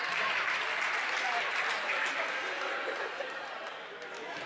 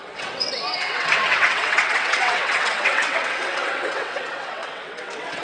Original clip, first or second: first